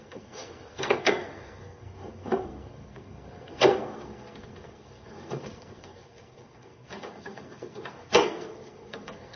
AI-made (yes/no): yes